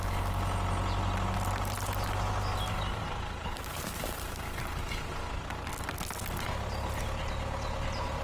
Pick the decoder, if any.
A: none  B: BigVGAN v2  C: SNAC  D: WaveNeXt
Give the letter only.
A